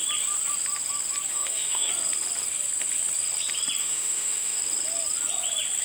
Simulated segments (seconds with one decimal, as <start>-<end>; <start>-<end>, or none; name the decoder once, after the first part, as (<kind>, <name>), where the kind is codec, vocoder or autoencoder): 1.3-1.9 (autoencoder, DAC-VAE); 3.8-4.6